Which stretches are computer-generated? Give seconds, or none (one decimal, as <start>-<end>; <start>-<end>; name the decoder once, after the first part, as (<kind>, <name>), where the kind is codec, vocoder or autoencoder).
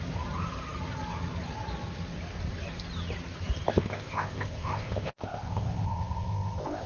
3.7-6.9 (codec, ZipCodec)